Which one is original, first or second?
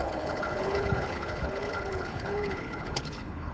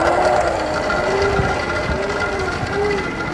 second